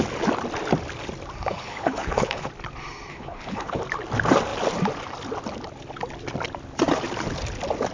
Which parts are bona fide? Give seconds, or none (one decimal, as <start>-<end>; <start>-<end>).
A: 0.0-1.5; 2.5-3.1; 3.8-7.9

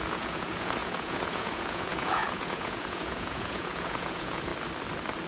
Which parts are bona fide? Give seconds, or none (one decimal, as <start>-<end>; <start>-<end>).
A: 4.5-5.3

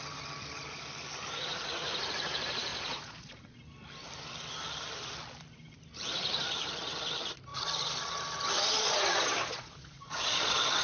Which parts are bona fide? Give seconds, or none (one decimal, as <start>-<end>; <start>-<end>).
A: 0.0-2.7; 3.6-8.6